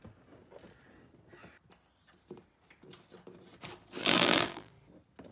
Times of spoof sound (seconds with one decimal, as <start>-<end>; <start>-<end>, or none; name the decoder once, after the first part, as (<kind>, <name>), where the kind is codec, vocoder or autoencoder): 4.0-4.7 (vocoder, BigVGAN v2)